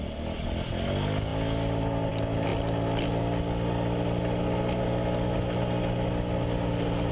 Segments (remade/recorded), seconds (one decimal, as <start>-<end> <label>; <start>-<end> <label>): 0.0-7.1 recorded